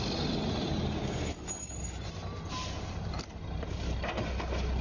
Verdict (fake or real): real